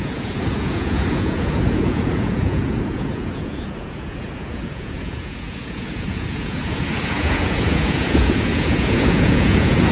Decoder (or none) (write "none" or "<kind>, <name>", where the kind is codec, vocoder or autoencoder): vocoder, Vocos